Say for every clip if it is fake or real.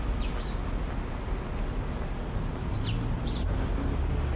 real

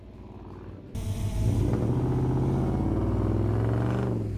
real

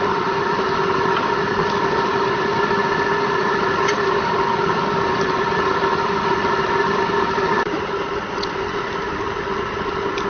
real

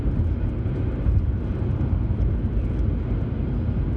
real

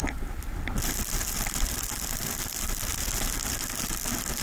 real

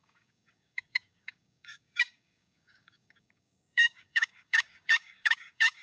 fake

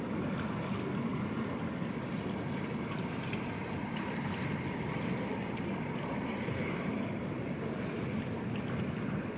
real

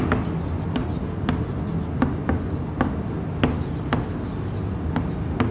real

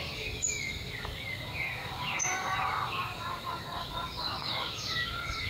fake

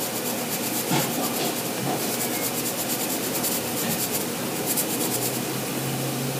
real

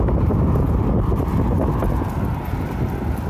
real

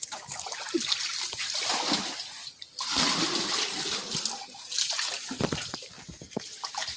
real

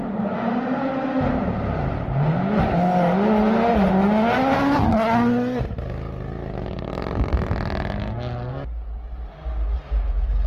real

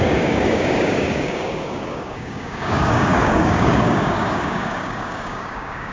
fake